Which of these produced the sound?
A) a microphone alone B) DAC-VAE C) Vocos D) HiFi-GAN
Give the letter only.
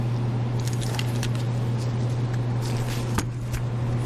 A